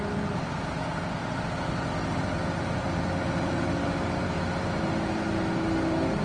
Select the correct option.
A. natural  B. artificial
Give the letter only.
A